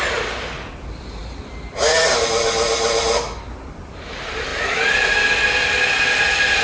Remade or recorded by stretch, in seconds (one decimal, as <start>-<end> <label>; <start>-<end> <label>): 0.0-6.6 recorded